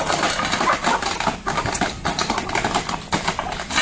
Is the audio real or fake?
real